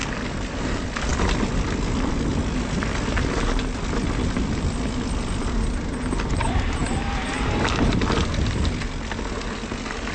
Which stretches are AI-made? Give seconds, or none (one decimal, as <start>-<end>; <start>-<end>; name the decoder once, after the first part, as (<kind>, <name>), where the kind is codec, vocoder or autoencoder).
none